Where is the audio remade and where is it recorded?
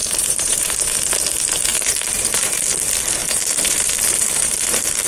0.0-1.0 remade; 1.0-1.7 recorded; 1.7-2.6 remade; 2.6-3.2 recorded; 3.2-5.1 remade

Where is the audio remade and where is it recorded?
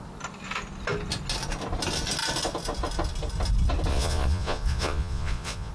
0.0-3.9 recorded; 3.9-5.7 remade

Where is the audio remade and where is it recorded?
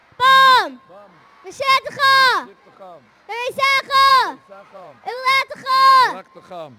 0.0-4.1 recorded; 4.1-5.9 remade; 5.9-6.8 recorded